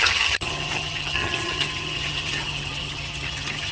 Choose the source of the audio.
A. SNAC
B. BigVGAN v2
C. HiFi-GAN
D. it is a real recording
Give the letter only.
C